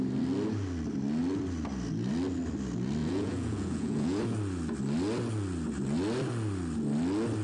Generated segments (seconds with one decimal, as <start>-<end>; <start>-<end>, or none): 3.0-4.2